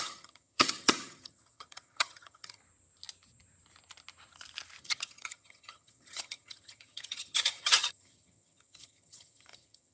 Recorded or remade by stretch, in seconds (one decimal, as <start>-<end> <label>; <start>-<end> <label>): 0.0-2.6 remade; 2.6-4.8 recorded; 4.8-9.9 remade

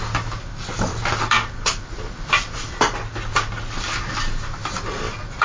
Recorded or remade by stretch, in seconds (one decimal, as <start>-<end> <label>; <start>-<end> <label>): 0.0-5.4 recorded

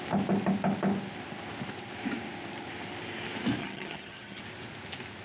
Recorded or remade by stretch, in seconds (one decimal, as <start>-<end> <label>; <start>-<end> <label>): 0.0-3.6 recorded; 3.6-4.4 remade; 4.4-5.2 recorded

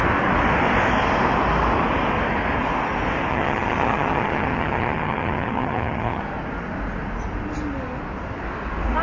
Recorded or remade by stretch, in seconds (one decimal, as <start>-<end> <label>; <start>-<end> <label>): 0.0-3.3 recorded; 3.3-6.2 remade; 6.2-9.0 recorded

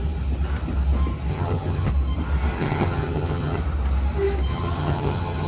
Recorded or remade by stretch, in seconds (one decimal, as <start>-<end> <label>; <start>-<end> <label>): 0.0-1.3 recorded; 1.3-1.9 remade; 1.9-2.6 recorded; 2.6-3.6 remade; 3.6-4.5 recorded; 4.5-5.5 remade